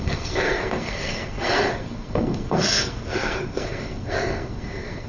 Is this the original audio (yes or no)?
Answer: no